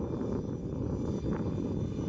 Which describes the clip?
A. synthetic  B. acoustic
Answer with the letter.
B